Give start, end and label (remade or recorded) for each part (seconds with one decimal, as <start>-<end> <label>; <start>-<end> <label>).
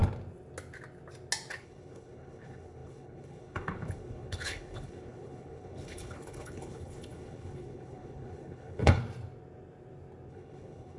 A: 0.0-1.5 recorded; 1.5-9.0 remade; 9.0-10.3 recorded; 10.3-11.0 remade